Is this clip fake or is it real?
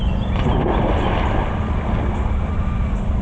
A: real